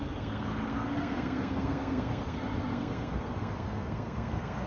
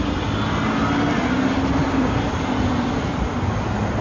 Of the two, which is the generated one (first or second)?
first